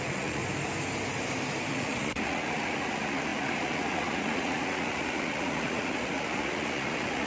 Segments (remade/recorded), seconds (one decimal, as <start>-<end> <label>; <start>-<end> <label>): 0.0-0.4 remade; 0.4-1.7 recorded; 1.7-7.3 remade